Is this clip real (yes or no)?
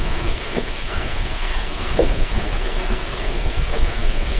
no